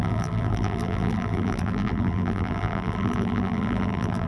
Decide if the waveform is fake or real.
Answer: fake